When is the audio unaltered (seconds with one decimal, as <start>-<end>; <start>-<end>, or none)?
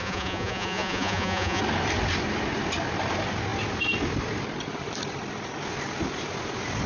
1.6-6.9